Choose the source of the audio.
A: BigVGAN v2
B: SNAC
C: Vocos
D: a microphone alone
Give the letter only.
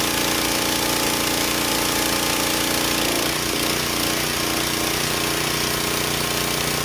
D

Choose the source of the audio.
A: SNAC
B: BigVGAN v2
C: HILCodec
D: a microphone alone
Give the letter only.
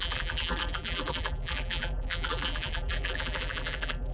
B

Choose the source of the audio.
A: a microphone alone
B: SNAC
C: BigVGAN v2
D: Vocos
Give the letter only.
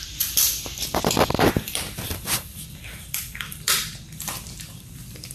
C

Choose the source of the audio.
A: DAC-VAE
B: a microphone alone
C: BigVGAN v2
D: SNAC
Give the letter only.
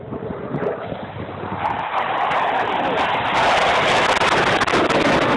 B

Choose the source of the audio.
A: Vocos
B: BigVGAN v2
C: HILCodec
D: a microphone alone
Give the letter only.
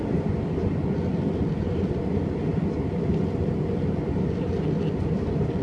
D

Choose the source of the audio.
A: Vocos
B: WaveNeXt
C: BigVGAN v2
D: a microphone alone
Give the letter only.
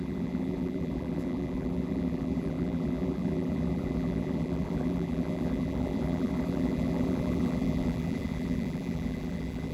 C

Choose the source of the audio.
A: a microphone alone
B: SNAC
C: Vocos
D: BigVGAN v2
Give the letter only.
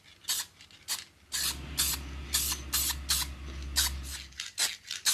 A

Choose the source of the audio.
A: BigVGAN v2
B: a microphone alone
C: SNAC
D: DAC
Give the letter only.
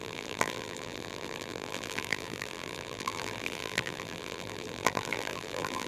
A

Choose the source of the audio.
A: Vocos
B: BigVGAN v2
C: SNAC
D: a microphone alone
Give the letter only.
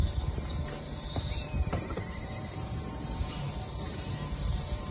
B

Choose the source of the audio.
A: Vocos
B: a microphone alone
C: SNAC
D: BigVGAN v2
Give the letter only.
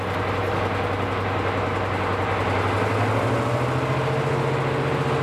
B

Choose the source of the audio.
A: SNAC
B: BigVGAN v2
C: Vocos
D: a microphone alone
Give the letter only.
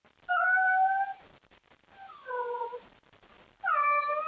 D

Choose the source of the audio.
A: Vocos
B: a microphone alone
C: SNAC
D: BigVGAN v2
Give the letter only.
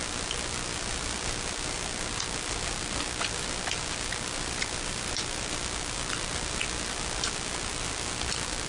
B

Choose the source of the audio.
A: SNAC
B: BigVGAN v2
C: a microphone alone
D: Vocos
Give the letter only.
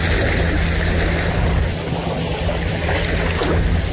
C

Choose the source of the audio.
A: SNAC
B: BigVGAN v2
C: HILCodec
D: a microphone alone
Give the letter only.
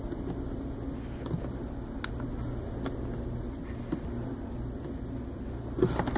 D